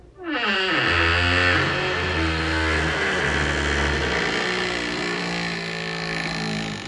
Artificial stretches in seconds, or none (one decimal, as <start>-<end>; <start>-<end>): none